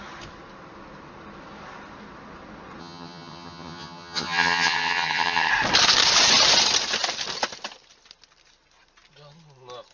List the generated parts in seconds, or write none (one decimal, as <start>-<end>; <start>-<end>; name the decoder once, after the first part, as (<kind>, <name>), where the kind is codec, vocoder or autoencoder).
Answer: 2.8-5.5 (vocoder, HiFi-GAN)